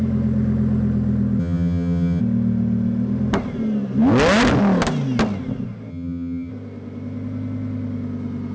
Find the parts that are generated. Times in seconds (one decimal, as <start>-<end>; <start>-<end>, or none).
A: 1.4-2.2; 5.9-6.5